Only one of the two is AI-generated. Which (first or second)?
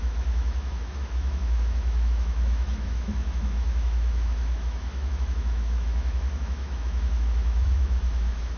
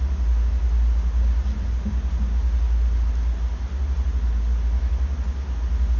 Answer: first